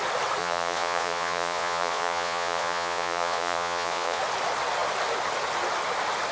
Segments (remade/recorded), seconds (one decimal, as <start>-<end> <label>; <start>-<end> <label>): 0.0-0.4 recorded; 0.4-4.2 remade; 4.2-6.3 recorded